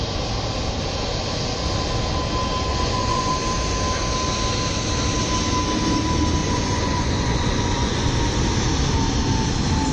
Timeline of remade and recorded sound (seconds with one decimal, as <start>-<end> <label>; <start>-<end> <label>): 0.0-2.7 recorded; 2.7-3.3 remade; 3.3-6.4 recorded; 6.4-8.1 remade; 8.1-9.9 recorded